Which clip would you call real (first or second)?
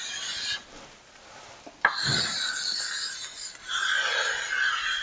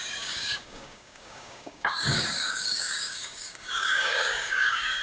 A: first